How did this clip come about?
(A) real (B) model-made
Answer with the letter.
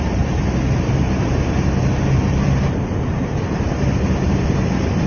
B